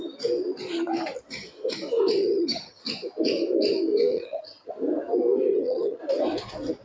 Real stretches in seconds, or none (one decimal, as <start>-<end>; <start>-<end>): 0.0-2.2; 2.8-4.1; 4.7-5.5; 6.0-6.8